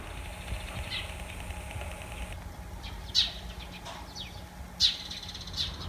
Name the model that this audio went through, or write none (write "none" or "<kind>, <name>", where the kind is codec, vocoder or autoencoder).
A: none